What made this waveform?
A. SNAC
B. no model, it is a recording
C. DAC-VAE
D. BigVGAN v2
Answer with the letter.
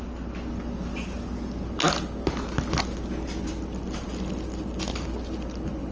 B